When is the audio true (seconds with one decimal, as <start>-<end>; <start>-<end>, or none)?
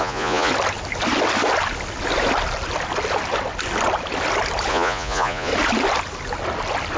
0.5-4.7; 5.5-7.0